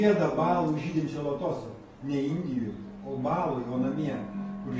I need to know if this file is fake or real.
real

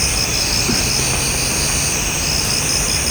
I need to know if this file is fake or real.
real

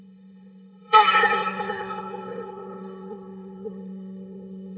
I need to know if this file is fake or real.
fake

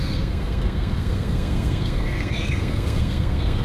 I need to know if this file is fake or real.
fake